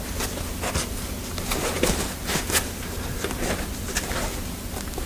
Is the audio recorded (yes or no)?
yes